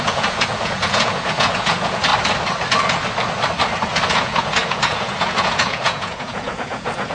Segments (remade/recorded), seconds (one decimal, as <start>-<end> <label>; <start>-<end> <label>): 0.0-2.1 remade; 2.1-4.1 recorded; 4.1-7.1 remade